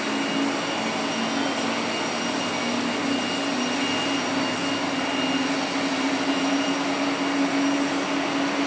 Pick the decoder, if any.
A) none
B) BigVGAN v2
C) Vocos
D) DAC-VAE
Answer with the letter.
A